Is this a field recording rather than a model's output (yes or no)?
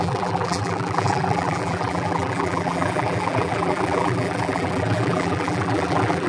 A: no